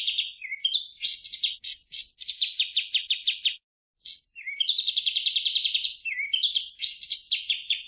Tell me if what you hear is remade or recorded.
recorded